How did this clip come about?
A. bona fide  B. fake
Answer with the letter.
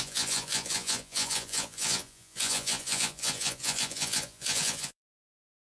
B